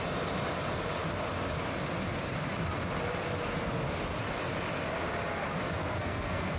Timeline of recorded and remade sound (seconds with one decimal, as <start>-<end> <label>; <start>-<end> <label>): 0.0-5.8 recorded; 5.8-6.6 remade